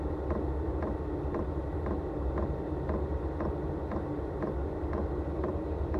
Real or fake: real